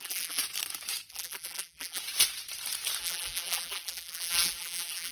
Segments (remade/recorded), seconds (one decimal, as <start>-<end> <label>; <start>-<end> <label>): 0.0-0.4 remade; 0.4-1.1 recorded; 1.1-2.0 remade; 2.0-3.0 recorded; 3.0-5.1 remade